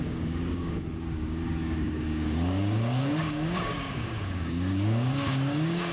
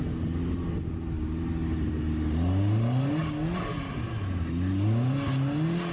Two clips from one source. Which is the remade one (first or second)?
first